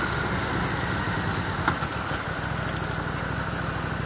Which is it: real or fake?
real